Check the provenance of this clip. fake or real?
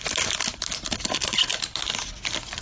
real